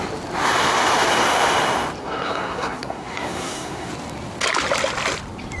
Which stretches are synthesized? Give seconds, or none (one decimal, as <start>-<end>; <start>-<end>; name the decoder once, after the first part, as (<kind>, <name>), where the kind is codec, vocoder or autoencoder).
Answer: 2.0-3.9 (codec, SNAC)